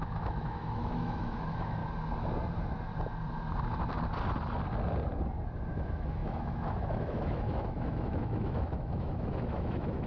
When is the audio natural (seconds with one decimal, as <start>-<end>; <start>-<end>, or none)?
1.8-5.7